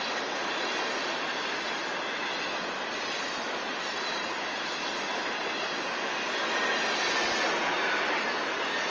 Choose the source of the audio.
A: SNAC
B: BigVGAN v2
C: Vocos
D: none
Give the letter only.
D